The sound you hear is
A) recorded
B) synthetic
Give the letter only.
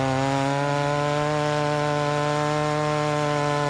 A